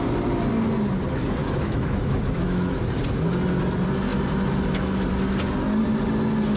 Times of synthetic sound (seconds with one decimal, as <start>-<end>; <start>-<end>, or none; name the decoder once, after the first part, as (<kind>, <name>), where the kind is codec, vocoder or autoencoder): 1.4-2.8 (autoencoder, DAC-VAE)